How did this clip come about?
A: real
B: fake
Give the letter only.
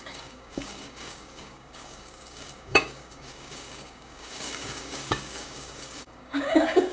B